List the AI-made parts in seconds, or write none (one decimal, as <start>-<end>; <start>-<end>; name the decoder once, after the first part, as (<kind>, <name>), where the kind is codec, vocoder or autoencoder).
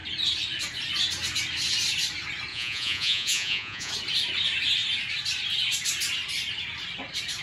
2.5-3.9 (vocoder, Vocos)